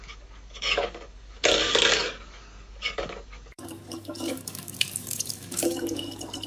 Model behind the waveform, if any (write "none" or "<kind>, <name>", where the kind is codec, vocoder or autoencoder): codec, DAC